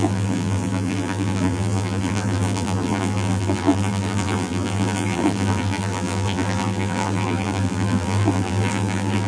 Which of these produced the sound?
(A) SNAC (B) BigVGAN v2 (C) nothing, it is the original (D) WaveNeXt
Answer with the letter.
B